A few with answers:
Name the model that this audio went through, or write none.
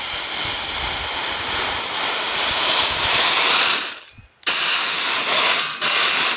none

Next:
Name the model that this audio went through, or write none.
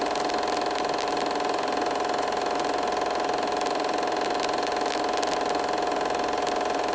none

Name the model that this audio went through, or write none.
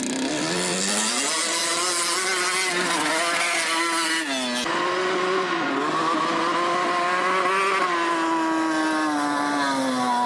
none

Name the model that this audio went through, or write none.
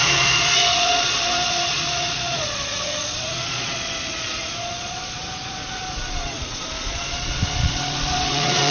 vocoder, Vocos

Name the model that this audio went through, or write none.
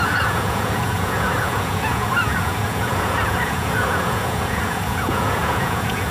vocoder, Vocos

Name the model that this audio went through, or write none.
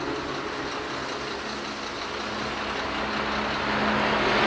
none